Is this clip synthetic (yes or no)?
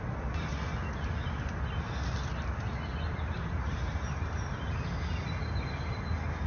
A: no